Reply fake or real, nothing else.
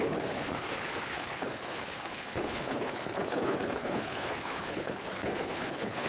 fake